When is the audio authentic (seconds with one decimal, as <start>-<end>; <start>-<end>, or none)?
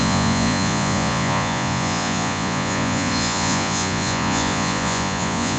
none